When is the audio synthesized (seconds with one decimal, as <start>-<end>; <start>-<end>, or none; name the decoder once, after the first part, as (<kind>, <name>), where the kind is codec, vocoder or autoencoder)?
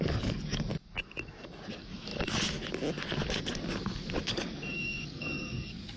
0.0-0.7 (codec, DAC); 1.7-2.1; 4.3-6.0